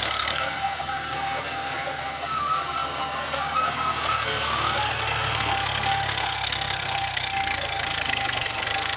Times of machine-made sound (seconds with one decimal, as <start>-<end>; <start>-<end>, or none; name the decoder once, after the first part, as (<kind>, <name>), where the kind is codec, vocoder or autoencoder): 0.0-9.0 (codec, SNAC)